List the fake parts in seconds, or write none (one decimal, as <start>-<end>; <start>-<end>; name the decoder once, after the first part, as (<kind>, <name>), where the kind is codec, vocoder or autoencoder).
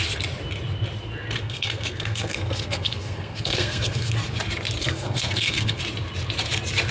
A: 1.4-4.1 (codec, SNAC); 4.8-5.8